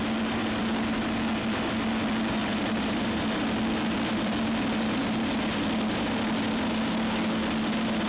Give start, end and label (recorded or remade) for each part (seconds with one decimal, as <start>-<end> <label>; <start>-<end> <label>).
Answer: 0.0-2.4 recorded; 2.4-3.0 remade; 3.0-8.1 recorded